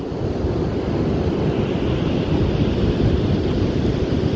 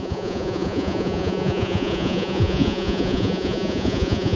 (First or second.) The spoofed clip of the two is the second